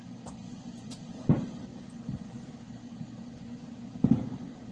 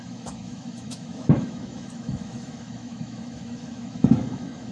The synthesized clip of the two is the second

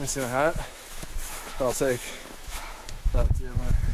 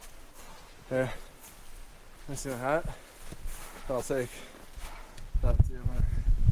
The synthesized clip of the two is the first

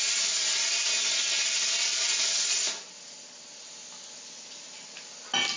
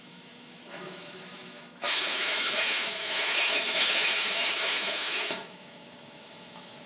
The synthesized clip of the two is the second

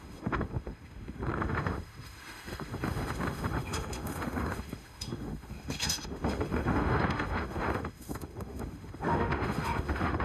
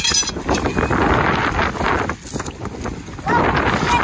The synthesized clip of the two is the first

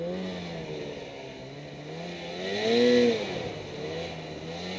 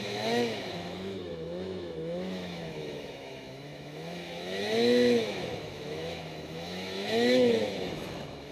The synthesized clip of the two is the second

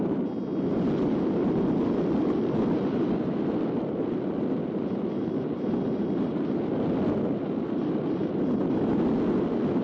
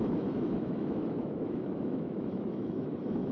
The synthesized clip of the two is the second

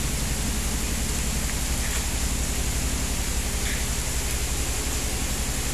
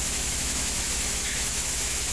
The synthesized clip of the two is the second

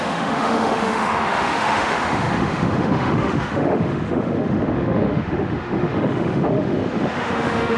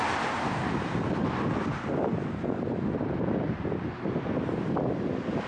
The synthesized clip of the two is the first